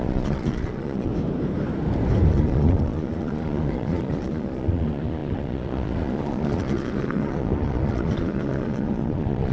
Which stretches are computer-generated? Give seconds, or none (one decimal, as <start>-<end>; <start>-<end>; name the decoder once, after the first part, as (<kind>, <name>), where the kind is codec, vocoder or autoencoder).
0.0-1.1 (vocoder, Vocos); 2.3-9.5